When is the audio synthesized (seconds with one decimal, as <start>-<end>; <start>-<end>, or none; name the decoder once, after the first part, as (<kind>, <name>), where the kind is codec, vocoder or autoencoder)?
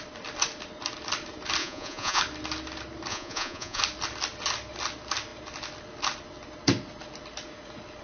1.6-2.2 (vocoder, Vocos); 3.1-3.8